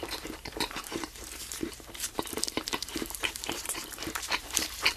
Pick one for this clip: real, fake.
fake